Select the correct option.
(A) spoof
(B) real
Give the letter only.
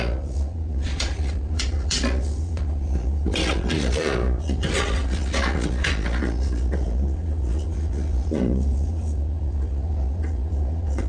A